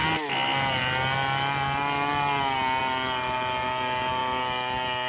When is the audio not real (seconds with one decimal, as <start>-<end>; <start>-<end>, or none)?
none